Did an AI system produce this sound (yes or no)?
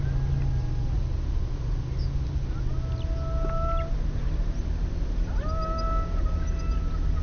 no